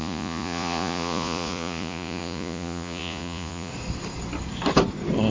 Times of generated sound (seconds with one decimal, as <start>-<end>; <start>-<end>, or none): 0.0-3.7